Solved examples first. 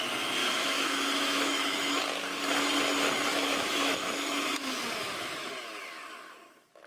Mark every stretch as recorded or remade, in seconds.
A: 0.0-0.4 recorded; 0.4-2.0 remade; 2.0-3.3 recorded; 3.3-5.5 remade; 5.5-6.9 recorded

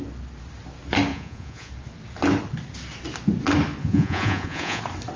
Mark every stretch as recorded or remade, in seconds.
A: 0.0-1.1 recorded; 1.1-1.7 remade; 1.7-3.8 recorded; 3.8-4.8 remade; 4.8-5.2 recorded